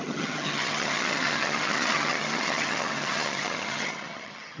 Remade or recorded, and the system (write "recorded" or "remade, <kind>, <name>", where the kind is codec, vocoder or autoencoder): remade, vocoder, HiFi-GAN